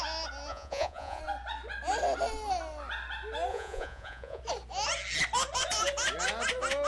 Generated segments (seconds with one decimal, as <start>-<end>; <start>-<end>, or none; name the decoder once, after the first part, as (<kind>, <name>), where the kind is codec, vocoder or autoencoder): 0.5-1.2 (vocoder, Vocos); 3.5-4.4